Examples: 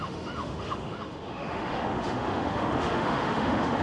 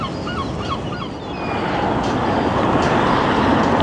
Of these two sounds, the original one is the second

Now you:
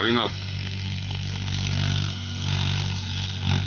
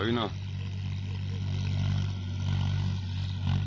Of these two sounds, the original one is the second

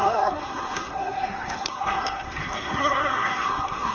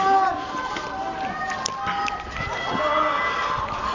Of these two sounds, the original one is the second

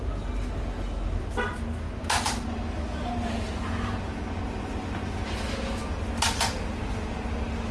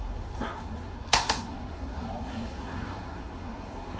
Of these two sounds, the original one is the first